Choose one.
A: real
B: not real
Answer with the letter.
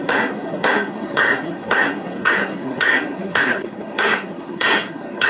B